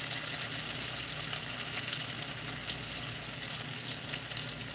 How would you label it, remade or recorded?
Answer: recorded